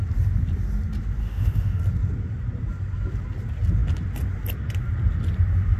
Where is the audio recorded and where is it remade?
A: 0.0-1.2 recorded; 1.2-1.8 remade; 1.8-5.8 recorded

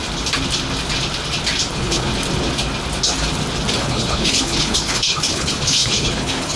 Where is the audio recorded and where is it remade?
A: 0.0-1.7 recorded; 1.7-2.1 remade; 2.1-3.8 recorded; 3.8-6.6 remade